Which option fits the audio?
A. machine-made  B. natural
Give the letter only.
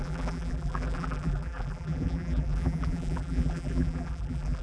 A